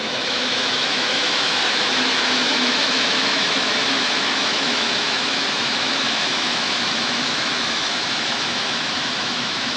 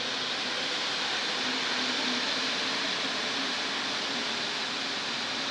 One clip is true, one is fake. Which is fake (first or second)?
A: first